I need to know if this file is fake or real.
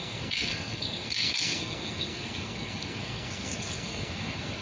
fake